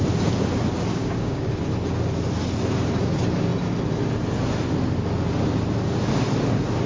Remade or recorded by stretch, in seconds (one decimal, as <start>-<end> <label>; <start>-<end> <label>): 0.0-0.9 recorded; 0.9-1.5 remade; 1.5-6.9 recorded